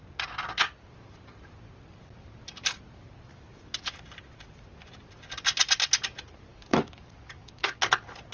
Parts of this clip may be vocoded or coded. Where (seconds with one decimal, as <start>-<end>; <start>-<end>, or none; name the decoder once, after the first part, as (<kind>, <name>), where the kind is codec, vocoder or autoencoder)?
3.3-3.9 (codec, DAC); 6.5-7.8